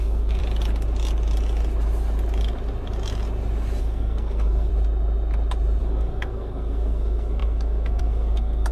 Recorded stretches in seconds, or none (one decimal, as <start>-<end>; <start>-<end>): 0.4-3.8; 4.7-5.8